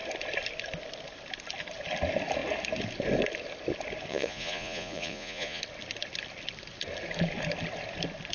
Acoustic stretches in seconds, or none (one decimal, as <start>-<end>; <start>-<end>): 0.0-4.1; 5.6-8.3